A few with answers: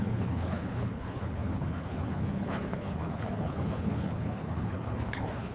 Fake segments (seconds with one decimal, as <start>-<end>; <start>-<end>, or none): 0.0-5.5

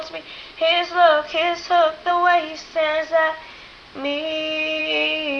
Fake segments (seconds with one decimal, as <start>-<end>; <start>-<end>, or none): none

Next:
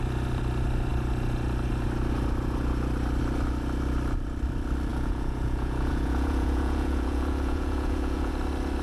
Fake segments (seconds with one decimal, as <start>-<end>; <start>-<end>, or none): 4.9-8.3

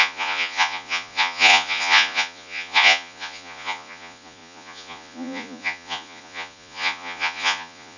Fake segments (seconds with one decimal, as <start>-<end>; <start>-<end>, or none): 0.0-8.0

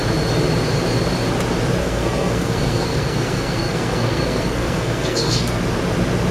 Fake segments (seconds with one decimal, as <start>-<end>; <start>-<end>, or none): 1.8-5.6